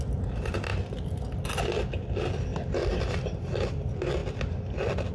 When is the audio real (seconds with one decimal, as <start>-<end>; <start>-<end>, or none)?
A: 0.0-5.1